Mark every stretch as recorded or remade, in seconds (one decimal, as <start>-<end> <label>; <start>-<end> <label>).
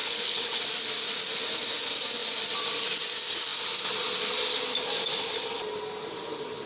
0.0-0.6 remade; 0.6-6.7 recorded